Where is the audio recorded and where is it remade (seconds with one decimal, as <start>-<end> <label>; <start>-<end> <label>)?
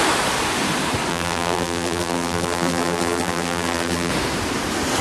0.0-1.1 recorded; 1.1-4.1 remade; 4.1-5.0 recorded